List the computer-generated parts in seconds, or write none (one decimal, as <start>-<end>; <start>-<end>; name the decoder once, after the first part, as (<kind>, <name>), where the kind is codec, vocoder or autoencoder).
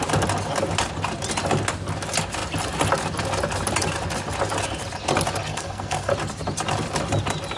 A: 5.5-6.1 (codec, SNAC)